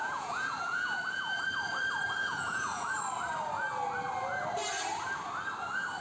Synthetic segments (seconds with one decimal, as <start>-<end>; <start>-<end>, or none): 0.0-1.4; 2.2-2.9